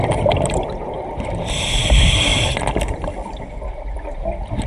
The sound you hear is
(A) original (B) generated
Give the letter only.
B